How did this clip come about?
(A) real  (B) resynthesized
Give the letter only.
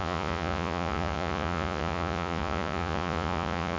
B